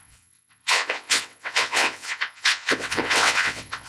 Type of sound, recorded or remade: remade